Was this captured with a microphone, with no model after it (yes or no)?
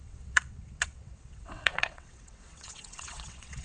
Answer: no